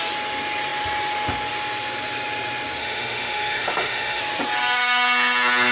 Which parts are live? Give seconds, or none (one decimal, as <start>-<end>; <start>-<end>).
0.0-2.8; 4.2-5.7